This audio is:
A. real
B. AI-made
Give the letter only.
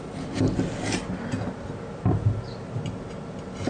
A